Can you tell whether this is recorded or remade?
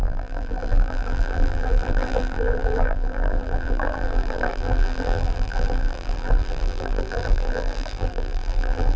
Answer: remade